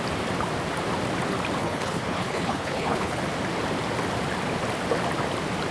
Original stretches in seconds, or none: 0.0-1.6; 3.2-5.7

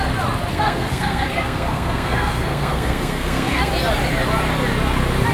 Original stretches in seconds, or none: 0.0-0.5; 3.7-5.3

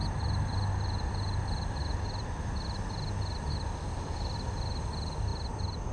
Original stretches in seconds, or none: 0.0-5.9